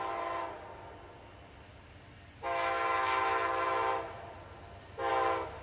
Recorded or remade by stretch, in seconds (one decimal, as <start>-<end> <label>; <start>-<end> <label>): 0.0-5.6 recorded